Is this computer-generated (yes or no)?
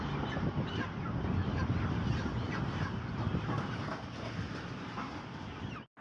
no